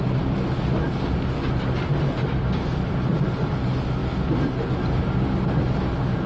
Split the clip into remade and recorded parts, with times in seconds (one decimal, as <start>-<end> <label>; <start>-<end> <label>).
0.0-1.9 recorded; 1.9-3.5 remade; 3.5-4.0 recorded; 4.0-4.5 remade; 4.5-6.3 recorded